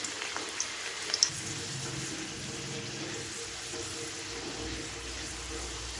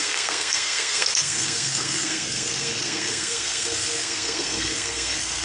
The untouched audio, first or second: first